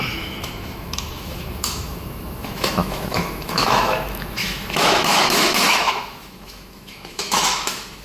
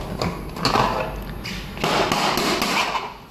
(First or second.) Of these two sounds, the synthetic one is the first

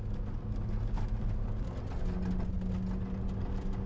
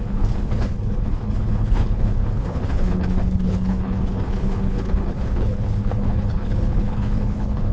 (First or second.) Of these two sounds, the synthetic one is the second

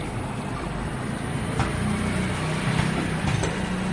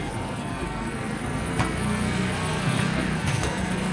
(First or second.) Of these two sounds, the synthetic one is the second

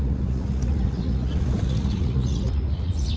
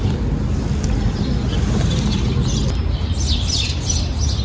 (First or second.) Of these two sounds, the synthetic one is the first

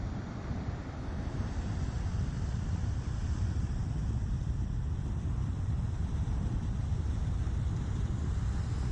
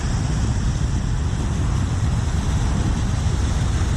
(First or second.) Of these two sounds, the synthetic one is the first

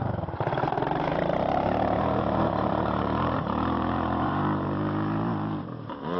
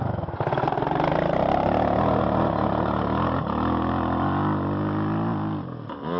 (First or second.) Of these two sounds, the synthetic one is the first